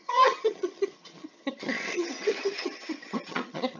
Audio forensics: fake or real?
fake